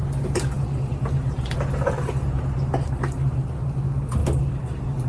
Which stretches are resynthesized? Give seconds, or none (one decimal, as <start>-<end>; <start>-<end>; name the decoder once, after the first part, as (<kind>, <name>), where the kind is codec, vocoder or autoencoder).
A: none